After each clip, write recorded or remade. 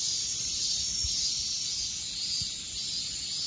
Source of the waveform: recorded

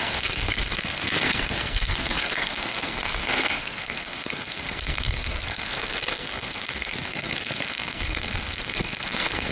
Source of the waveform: remade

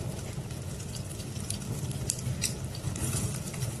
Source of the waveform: remade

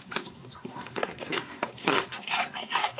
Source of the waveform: remade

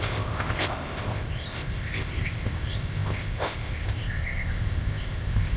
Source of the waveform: remade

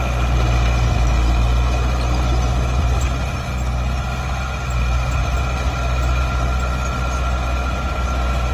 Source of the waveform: recorded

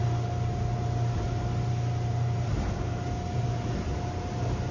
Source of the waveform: recorded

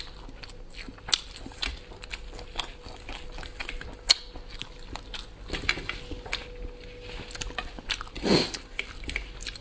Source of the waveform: recorded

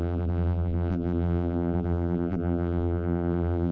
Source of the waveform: remade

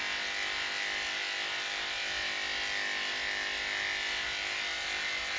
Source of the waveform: recorded